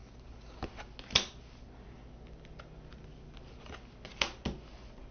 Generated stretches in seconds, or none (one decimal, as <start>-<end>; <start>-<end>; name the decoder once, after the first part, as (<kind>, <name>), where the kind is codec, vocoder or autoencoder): none